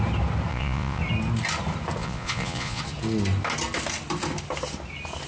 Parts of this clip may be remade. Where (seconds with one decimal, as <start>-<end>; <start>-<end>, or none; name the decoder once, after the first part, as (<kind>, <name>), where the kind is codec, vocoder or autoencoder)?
0.5-1.0 (vocoder, Vocos); 2.0-2.8